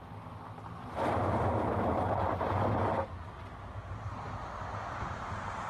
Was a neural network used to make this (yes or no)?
no